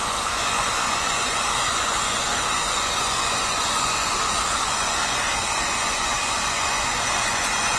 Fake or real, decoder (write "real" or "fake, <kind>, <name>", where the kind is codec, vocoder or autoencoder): fake, vocoder, Vocos